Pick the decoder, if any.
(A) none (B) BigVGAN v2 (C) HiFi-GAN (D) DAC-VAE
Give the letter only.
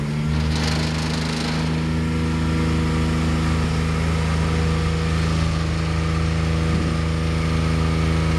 A